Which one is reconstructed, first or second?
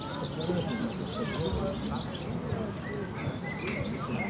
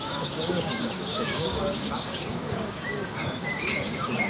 second